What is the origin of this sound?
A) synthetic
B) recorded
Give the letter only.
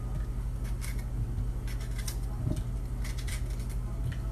B